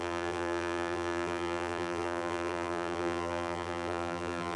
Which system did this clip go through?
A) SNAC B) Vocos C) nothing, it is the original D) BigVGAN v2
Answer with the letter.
D